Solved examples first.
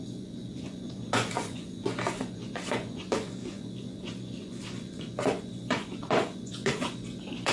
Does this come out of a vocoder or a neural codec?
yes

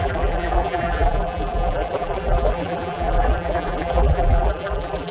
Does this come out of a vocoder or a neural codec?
yes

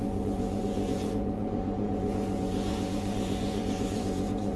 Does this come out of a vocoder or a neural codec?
yes